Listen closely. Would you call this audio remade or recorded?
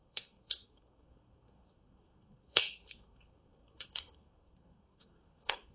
remade